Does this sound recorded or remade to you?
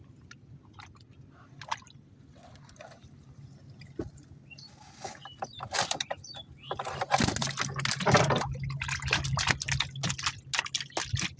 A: recorded